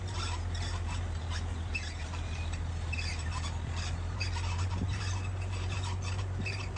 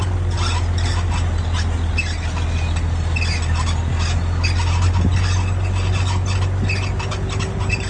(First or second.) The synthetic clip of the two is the first